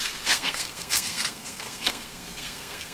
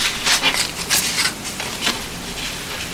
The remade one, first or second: first